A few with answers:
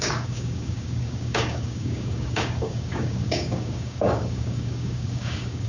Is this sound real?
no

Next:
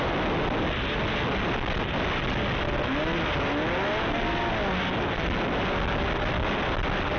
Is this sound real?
yes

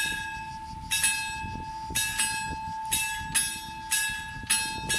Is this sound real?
yes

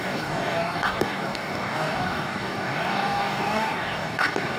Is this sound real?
no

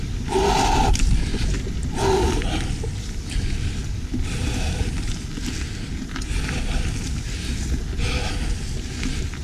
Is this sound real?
yes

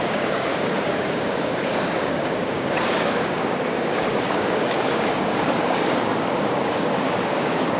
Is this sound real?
no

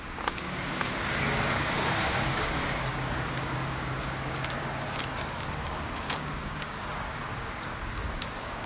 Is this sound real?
no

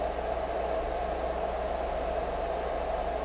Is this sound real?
yes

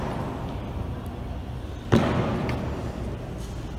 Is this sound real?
yes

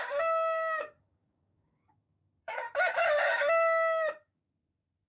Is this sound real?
no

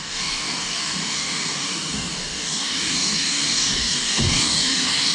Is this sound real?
no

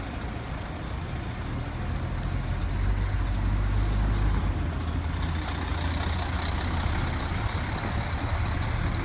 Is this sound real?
yes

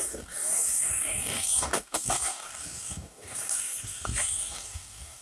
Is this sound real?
no